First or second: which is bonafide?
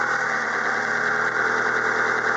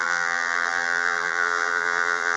first